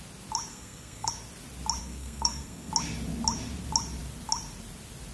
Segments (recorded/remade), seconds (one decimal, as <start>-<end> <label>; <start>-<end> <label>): 0.0-0.5 recorded; 0.5-1.1 remade; 1.1-1.8 recorded; 1.8-2.7 remade; 2.7-5.1 recorded